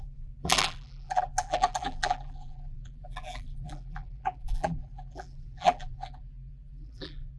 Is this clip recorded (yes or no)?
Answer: no